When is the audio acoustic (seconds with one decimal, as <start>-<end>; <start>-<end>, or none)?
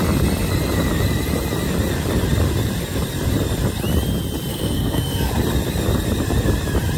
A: 0.0-4.5; 5.3-7.0